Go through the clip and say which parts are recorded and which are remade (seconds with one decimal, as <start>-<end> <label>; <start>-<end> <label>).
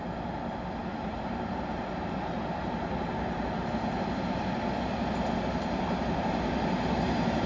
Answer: 0.0-0.8 recorded; 0.8-4.4 remade; 4.4-7.5 recorded